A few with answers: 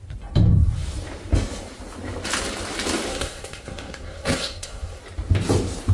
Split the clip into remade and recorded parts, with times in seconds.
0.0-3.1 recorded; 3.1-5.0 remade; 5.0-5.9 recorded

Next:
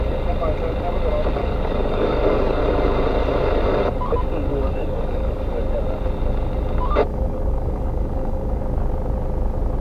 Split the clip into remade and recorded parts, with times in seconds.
0.0-1.4 recorded; 1.4-2.6 remade; 2.6-4.5 recorded; 4.5-5.6 remade; 5.6-7.1 recorded; 7.1-8.6 remade; 8.6-9.8 recorded

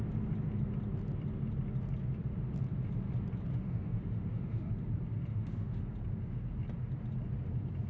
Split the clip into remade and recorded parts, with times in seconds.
0.0-3.5 recorded; 3.5-4.7 remade; 4.7-5.3 recorded; 5.3-5.8 remade; 5.8-7.9 recorded

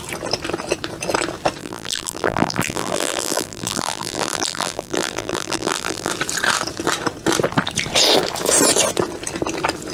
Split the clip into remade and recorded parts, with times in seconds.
0.0-1.6 recorded; 1.6-6.1 remade; 6.1-9.9 recorded